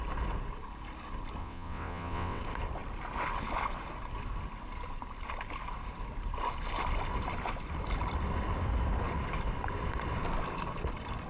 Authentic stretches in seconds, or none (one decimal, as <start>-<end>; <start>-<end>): 0.0-1.4; 2.4-11.3